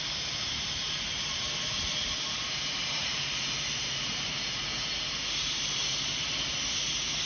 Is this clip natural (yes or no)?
no